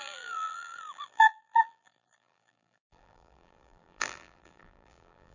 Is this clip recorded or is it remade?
remade